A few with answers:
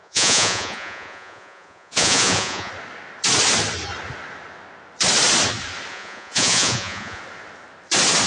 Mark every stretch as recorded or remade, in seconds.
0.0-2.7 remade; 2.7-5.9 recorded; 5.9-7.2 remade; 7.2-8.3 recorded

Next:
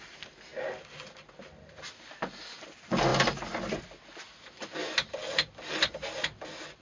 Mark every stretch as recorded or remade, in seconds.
0.0-6.8 recorded

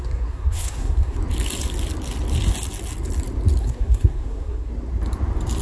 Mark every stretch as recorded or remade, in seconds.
0.0-1.2 remade; 1.2-3.6 recorded; 3.6-4.7 remade; 4.7-5.6 recorded

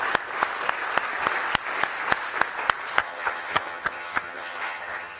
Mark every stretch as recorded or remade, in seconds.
0.0-3.0 recorded; 3.0-5.2 remade

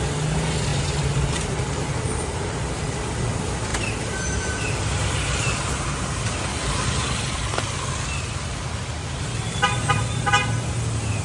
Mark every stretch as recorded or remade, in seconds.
0.0-0.7 recorded; 0.7-3.0 remade; 3.0-3.7 recorded; 3.7-7.8 remade; 7.8-9.0 recorded; 9.0-10.2 remade; 10.2-11.2 recorded

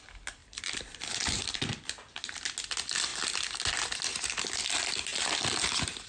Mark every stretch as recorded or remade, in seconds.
0.0-0.4 recorded; 0.4-1.5 remade; 1.5-5.1 recorded; 5.1-6.1 remade

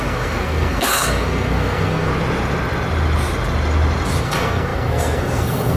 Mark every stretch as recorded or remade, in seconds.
0.0-2.1 remade; 2.1-4.2 recorded; 4.2-5.8 remade

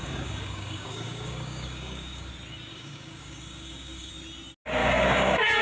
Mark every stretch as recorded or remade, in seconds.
0.0-2.3 remade; 2.3-2.7 recorded; 2.7-4.1 remade; 4.1-4.8 recorded; 4.8-5.6 remade